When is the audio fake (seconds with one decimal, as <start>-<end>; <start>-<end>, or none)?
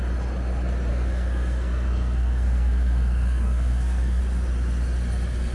0.9-4.2